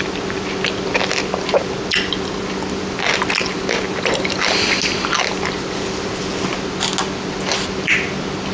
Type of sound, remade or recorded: recorded